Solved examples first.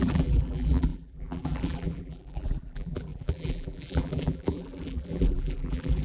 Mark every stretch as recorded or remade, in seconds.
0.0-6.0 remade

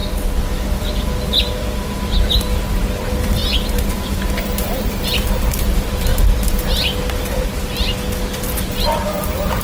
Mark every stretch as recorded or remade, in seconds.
0.0-3.4 remade; 3.4-3.9 recorded; 3.9-6.1 remade; 6.1-8.2 recorded; 8.2-9.6 remade

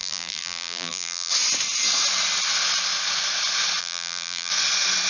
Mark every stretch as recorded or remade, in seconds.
0.0-1.3 remade; 1.3-3.8 recorded; 3.8-4.5 remade; 4.5-5.1 recorded

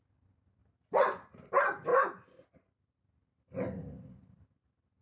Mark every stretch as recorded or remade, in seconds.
0.0-5.0 recorded

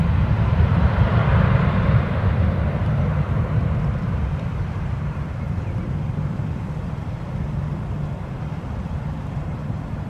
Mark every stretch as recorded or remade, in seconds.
0.0-9.6 remade; 9.6-10.1 recorded

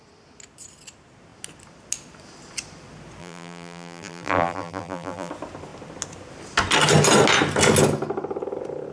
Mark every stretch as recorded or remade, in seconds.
0.0-3.2 recorded; 3.2-5.3 remade; 5.3-8.9 recorded

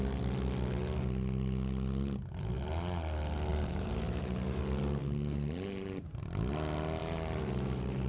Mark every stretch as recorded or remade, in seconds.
0.0-3.5 recorded; 3.5-4.6 remade; 4.6-5.0 recorded; 5.0-6.2 remade; 6.2-7.0 recorded; 7.0-8.1 remade

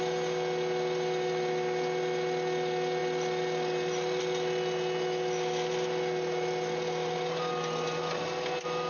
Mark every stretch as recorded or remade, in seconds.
0.0-8.9 recorded